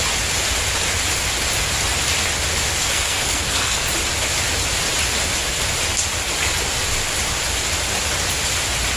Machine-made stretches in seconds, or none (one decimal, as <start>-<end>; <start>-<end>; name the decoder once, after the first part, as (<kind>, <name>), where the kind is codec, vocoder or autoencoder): 2.8-3.9 (codec, SNAC)